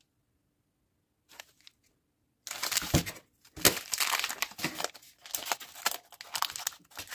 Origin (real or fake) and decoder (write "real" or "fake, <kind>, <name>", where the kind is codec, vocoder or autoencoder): real